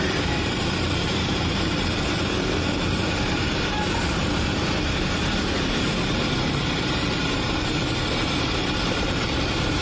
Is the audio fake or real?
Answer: fake